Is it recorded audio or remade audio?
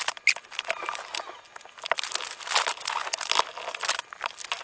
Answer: recorded